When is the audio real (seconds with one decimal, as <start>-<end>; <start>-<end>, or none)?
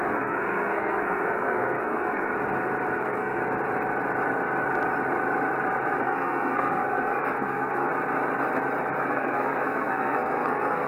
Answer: 2.3-3.0; 3.4-6.0; 7.9-9.1